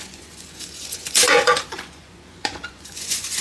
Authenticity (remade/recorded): remade